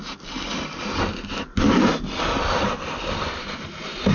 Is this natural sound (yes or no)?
yes